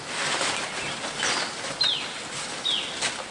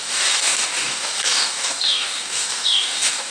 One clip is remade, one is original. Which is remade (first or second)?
second